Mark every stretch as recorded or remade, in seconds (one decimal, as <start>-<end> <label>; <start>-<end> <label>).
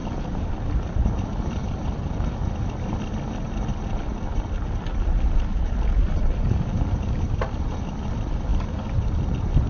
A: 0.0-0.5 remade; 0.5-9.7 recorded